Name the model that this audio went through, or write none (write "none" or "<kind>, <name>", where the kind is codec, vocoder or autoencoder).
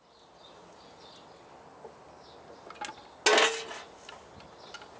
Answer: none